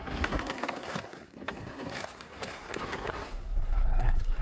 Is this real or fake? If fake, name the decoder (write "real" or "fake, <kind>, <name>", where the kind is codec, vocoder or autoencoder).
fake, codec, SNAC